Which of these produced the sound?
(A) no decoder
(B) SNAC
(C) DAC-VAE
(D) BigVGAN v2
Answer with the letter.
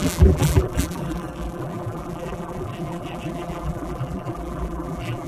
D